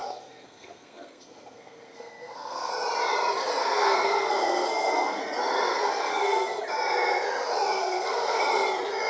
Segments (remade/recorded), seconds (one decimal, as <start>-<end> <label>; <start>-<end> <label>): 0.0-2.7 remade; 2.7-3.6 recorded; 3.6-5.2 remade; 5.2-5.7 recorded; 5.7-6.6 remade; 6.6-7.8 recorded; 7.8-8.4 remade; 8.4-9.1 recorded